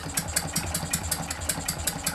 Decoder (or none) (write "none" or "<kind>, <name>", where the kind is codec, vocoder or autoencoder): none